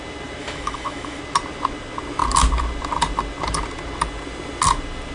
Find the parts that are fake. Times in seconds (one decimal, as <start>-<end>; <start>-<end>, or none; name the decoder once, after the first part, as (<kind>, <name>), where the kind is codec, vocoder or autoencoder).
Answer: 0.4-1.2 (autoencoder, DAC-VAE)